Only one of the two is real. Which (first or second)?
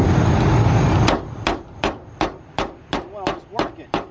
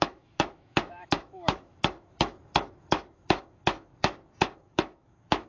first